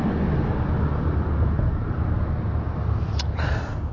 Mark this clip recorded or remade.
recorded